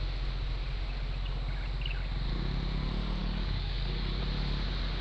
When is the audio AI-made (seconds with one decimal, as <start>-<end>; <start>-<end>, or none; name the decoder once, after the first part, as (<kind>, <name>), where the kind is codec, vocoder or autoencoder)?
3.2-4.2 (codec, DAC)